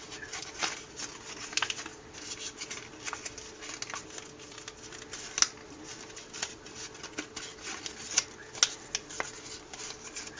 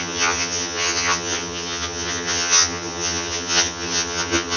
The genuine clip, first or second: first